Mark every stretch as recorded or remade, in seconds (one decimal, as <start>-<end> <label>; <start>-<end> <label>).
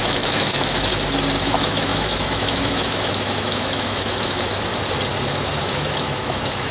0.0-0.9 remade; 0.9-1.4 recorded; 1.4-4.7 remade; 4.7-5.6 recorded; 5.6-6.7 remade